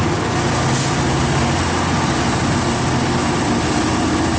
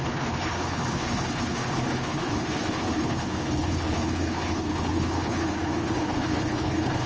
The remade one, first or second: second